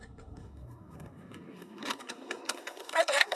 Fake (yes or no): yes